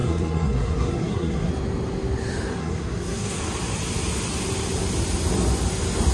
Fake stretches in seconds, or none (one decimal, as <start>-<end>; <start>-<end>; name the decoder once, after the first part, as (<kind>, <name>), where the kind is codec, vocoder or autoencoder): 0.0-1.5 (codec, SNAC); 2.6-3.4